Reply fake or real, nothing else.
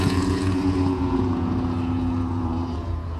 fake